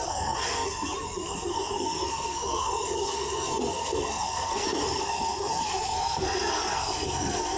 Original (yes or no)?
no